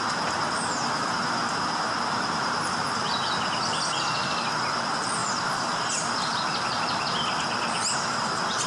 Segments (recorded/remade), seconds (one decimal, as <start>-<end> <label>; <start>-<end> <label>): 0.0-5.2 recorded; 5.2-5.8 remade; 5.8-8.7 recorded